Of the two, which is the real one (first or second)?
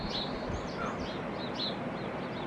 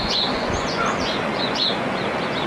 first